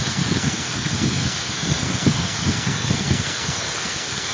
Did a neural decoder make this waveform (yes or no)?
yes